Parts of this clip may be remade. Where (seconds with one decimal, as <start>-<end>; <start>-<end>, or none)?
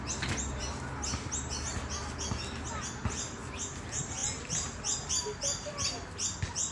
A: none